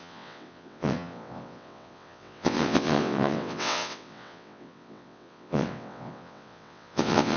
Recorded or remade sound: remade